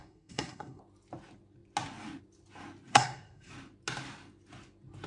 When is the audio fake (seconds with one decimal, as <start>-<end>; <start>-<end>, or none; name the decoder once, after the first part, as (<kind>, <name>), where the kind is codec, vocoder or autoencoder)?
0.0-0.8 (codec, SNAC); 2.9-3.5